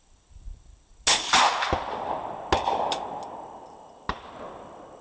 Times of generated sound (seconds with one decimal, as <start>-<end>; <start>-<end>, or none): none